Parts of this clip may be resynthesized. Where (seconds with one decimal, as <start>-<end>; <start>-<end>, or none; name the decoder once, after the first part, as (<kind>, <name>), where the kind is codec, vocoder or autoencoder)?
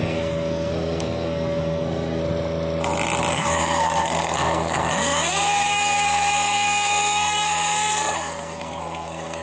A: 0.0-2.2 (codec, SNAC); 3.3-9.4